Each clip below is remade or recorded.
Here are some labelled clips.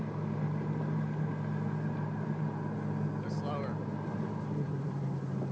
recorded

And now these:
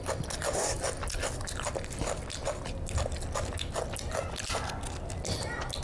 recorded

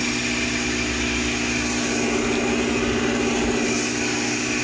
recorded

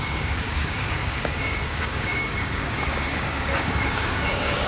remade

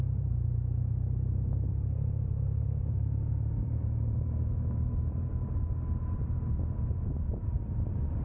remade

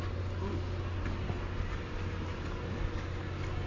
recorded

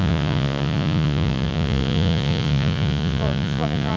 remade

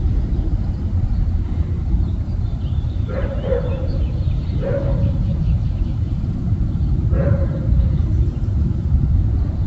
remade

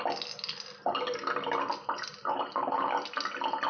recorded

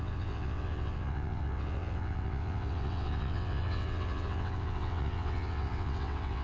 remade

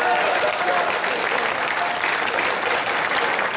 recorded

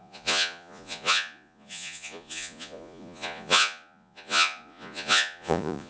remade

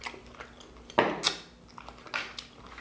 recorded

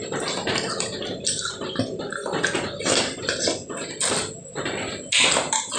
recorded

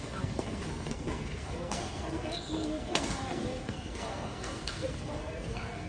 remade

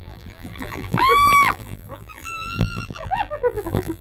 remade